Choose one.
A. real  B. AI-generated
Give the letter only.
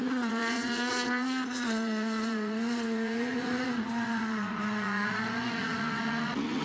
B